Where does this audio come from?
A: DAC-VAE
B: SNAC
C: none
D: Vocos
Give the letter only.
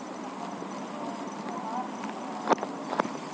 C